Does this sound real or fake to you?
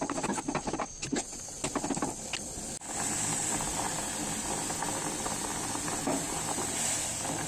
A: real